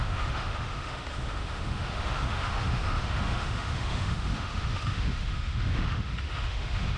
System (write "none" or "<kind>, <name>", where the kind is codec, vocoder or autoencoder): autoencoder, DAC-VAE